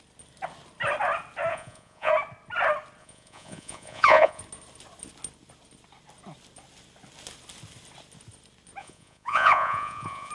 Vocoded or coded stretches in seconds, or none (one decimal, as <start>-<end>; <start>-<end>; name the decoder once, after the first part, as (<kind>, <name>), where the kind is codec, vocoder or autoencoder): 1.5-2.1 (vocoder, Vocos); 3.0-4.4; 8.8-10.3